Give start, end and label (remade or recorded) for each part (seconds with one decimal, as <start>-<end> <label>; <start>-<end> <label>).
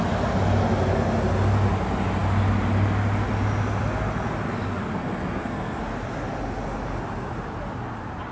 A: 0.0-5.0 recorded; 5.0-5.8 remade; 5.8-8.3 recorded